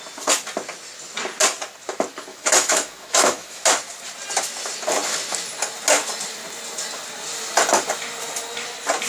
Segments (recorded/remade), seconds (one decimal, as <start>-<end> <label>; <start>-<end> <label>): 0.0-2.3 recorded; 2.3-3.6 remade; 3.6-9.1 recorded